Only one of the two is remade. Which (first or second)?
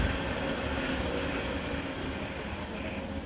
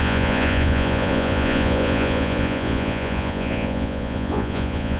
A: second